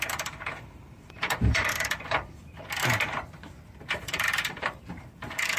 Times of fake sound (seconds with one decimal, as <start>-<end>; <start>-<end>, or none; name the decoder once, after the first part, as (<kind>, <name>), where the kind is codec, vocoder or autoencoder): 0.0-2.4 (vocoder, BigVGAN v2); 4.0-5.6